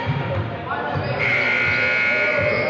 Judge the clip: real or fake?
real